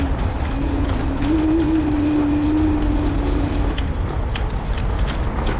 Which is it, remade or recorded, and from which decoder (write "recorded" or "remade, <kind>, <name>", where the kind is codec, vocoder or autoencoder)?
recorded